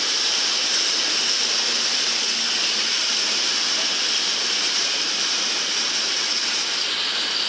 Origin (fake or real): real